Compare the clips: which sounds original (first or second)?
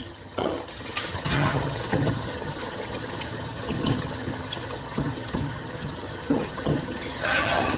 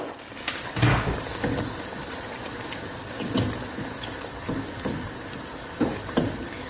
second